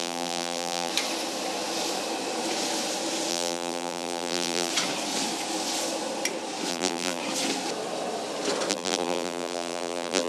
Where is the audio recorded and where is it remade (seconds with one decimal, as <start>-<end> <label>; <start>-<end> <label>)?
0.0-0.9 remade; 0.9-3.3 recorded; 3.3-4.7 remade; 4.7-6.7 recorded; 6.7-7.2 remade; 7.2-8.7 recorded; 8.7-10.3 remade